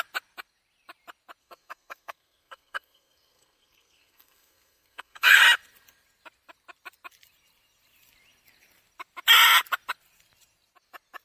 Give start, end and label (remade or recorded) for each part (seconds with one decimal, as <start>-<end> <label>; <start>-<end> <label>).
0.0-1.4 recorded; 1.4-5.4 remade; 5.4-11.2 recorded